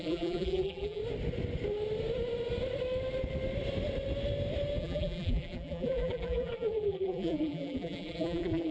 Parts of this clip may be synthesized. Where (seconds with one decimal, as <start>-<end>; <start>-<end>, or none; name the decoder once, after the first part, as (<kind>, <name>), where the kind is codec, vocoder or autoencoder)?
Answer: 0.0-1.0 (vocoder, BigVGAN v2); 4.8-8.7